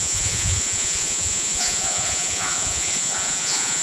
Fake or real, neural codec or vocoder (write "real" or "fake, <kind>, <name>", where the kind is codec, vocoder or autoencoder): fake, vocoder, Vocos